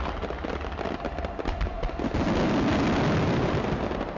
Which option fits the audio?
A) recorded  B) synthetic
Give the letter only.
A